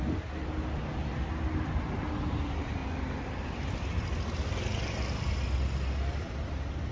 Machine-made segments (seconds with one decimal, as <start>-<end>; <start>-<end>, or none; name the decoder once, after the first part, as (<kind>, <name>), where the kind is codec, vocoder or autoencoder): none